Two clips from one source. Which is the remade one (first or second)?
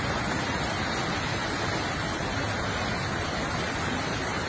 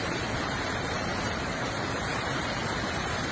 second